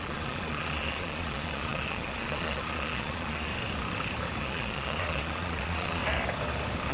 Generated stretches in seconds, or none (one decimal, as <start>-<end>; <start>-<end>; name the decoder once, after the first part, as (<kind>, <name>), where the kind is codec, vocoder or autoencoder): 0.0-3.5 (vocoder, Vocos); 4.4-6.0